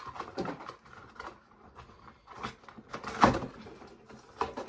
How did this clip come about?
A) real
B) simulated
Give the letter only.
A